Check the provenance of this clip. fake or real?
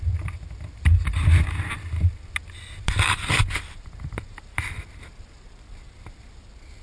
real